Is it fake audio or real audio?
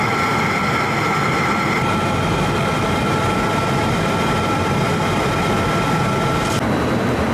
fake